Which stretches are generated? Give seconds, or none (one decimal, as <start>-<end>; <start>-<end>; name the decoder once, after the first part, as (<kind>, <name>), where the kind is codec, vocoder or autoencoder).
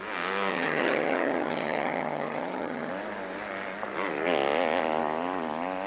0.5-2.9 (vocoder, HiFi-GAN)